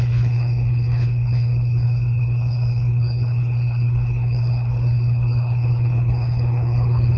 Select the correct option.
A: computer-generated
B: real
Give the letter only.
A